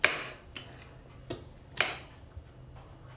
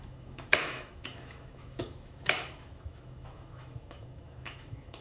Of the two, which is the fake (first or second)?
second